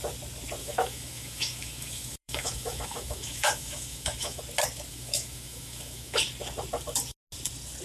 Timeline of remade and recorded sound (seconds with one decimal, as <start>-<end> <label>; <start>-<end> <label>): 0.0-0.6 recorded; 0.6-4.4 remade; 4.4-4.9 recorded; 4.9-6.2 remade; 6.2-7.8 recorded